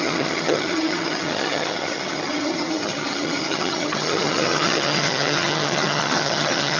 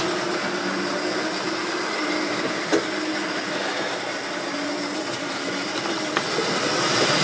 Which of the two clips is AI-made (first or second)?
first